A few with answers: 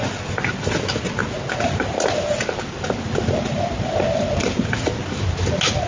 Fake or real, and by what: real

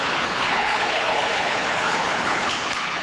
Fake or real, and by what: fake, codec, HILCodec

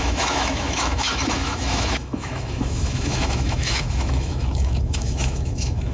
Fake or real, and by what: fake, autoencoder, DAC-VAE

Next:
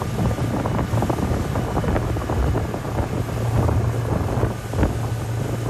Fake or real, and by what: real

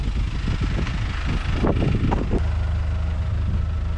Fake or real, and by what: real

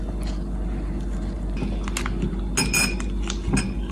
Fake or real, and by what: real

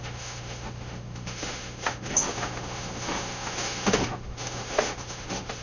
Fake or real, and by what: fake, autoencoder, DAC-VAE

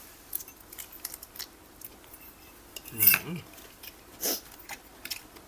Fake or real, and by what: real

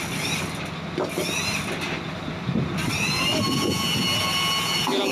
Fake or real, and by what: real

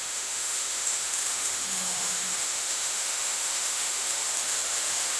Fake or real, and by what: fake, autoencoder, DAC-VAE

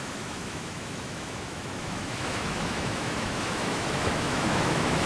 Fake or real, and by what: fake, autoencoder, DAC-VAE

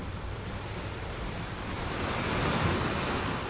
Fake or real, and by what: real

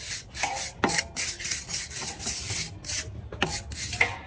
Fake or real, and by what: real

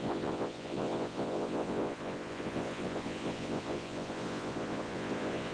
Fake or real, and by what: fake, vocoder, Vocos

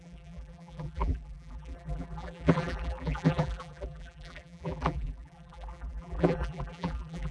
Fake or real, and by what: fake, vocoder, BigVGAN v2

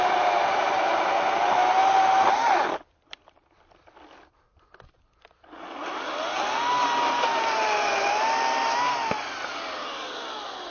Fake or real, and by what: real